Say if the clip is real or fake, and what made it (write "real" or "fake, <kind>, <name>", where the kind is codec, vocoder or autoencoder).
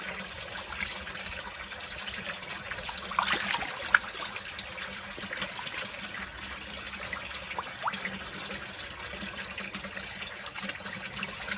real